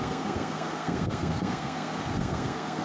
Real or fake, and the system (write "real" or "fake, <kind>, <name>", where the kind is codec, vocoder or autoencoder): fake, codec, SNAC